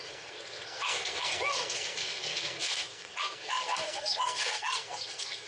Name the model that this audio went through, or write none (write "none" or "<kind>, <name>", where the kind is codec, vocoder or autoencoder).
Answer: codec, SNAC